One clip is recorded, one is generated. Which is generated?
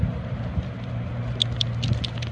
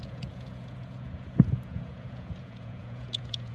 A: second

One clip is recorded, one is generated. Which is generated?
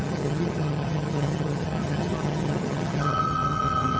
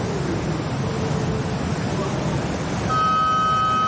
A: first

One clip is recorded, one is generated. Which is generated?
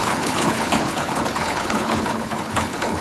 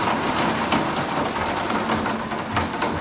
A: first